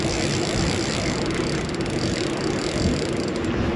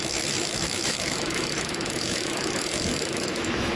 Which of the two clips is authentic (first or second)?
first